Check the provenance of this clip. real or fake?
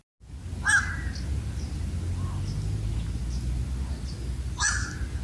real